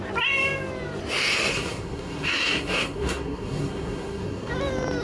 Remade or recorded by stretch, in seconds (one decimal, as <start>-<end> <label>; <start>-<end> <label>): 0.0-1.5 recorded; 1.5-4.5 remade; 4.5-5.0 recorded